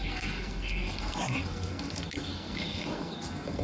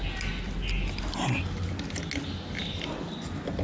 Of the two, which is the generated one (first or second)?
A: first